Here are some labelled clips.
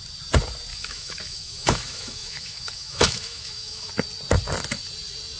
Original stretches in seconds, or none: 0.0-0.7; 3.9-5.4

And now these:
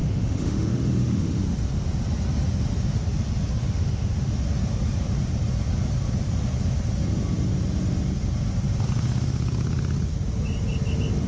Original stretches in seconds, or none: 1.4-3.6; 4.3-11.3

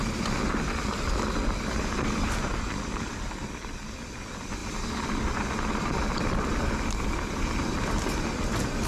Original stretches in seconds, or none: 0.0-8.9

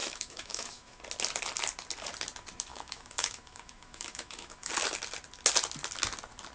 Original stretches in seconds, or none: 1.0-2.7; 4.7-6.5

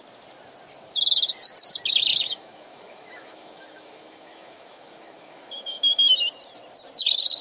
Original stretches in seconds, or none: 0.0-2.1; 6.1-7.4